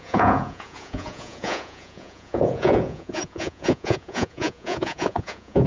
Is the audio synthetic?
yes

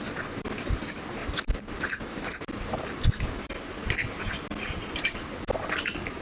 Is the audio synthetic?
no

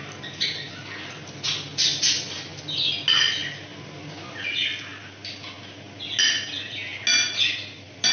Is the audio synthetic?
no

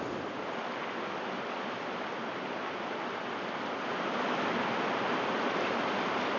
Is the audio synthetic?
no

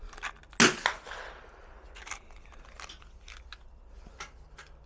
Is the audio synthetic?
no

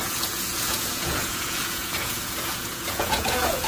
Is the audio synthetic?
yes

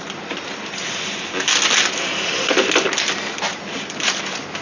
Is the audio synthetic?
no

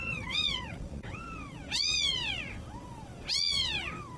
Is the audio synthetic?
yes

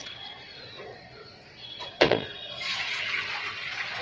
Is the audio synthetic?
yes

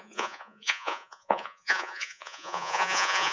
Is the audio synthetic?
yes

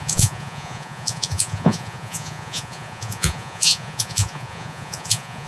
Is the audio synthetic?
yes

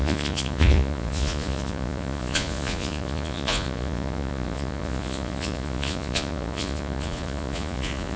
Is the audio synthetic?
yes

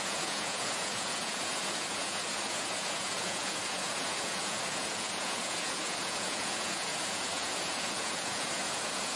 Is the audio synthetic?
yes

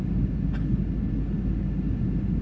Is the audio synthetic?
no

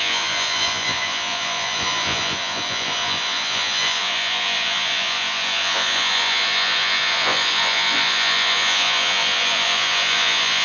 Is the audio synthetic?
yes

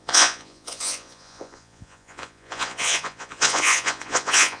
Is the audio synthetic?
yes